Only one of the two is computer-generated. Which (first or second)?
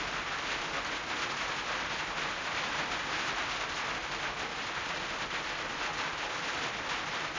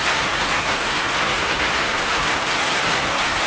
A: second